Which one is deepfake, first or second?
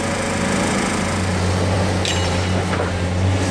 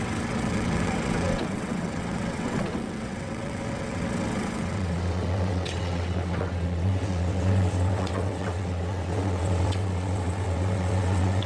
second